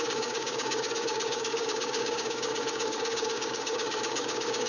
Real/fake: fake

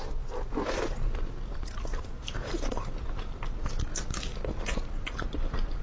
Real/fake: real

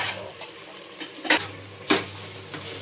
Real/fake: real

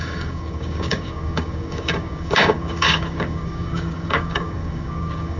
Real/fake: fake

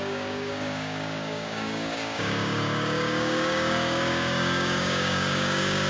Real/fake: fake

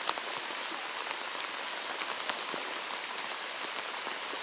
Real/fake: real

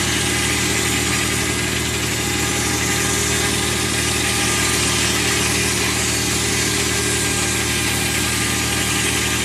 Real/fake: real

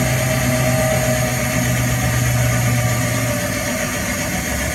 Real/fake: real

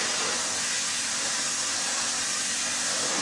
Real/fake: real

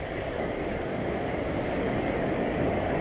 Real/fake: fake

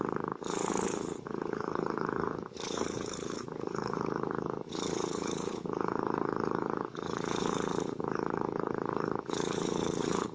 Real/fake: fake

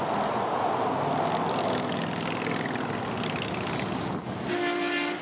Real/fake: real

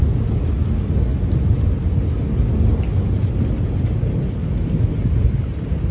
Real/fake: real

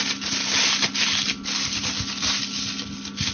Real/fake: real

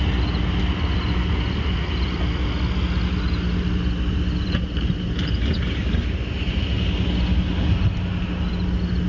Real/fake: real